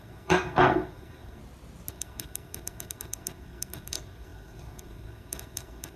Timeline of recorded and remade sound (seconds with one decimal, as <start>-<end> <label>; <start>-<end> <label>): 0.0-1.4 remade; 1.4-1.9 recorded; 1.9-6.0 remade